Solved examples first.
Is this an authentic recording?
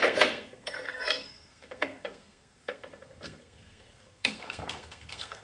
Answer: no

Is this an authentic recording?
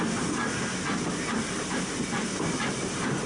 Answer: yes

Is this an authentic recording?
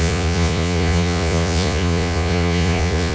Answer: no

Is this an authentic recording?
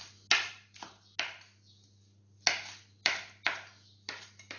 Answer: yes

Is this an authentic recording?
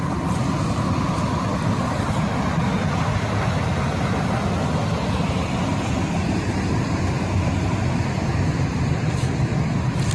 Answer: yes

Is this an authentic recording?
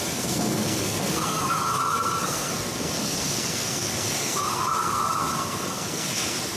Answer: no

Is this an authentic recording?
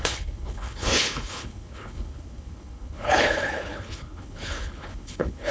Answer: no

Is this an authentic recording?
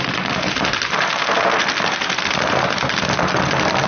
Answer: yes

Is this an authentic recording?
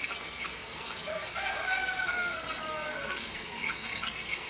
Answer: no